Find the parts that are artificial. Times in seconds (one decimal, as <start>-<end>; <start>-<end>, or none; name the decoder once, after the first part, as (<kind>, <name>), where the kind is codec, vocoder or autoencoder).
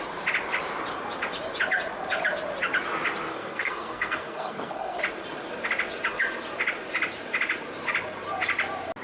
3.3-5.0 (codec, SNAC)